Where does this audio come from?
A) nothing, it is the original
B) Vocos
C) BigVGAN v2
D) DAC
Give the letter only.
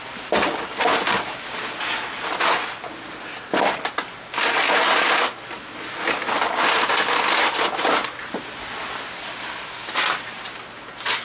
A